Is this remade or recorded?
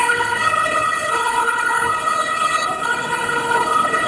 remade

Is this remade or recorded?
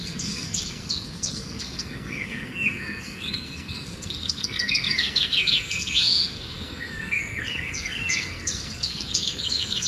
remade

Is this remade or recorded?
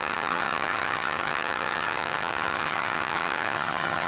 remade